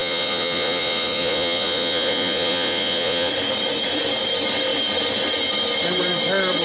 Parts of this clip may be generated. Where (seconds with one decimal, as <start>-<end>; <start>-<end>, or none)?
0.0-3.3

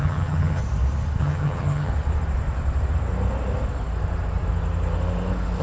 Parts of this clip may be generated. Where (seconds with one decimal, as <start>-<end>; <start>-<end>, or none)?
0.0-0.6; 1.2-1.9

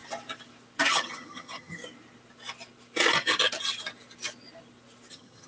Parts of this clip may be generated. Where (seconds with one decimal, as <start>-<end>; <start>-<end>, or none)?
0.9-1.8; 5.1-5.5

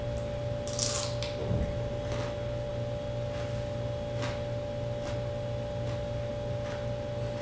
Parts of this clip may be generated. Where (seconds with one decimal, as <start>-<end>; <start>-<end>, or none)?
none

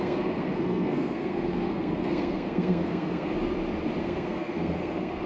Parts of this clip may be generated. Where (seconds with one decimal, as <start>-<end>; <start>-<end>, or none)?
0.0-3.3; 4.0-5.3

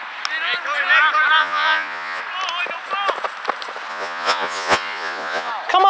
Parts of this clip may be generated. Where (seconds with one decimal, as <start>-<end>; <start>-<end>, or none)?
1.4-2.2; 3.9-5.5